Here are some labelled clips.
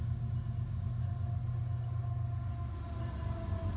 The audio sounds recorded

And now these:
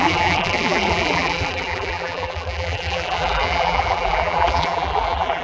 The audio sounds remade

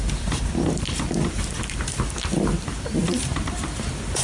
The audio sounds remade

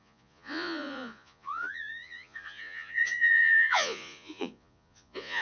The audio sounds remade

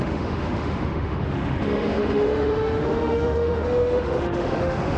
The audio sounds remade